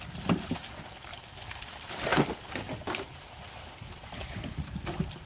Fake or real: real